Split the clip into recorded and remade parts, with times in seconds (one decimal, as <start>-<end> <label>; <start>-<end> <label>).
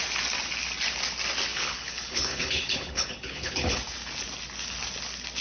0.0-1.5 recorded; 1.5-3.8 remade; 3.8-5.4 recorded